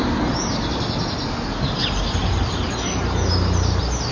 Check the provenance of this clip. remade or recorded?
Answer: recorded